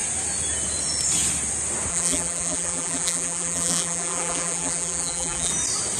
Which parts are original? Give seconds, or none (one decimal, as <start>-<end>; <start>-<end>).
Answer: 0.0-1.9; 5.5-6.0